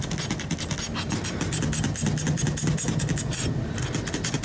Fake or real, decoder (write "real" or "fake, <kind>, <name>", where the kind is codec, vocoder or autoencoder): real